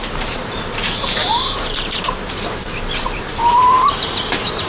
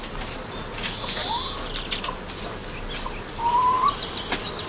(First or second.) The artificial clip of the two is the first